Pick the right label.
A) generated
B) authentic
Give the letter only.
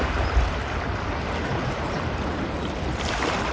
B